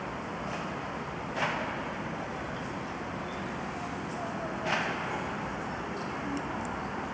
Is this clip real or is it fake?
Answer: real